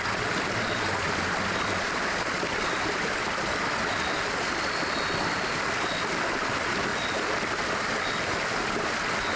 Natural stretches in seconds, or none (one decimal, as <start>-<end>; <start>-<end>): 0.0-9.4